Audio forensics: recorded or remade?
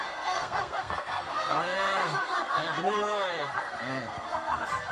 remade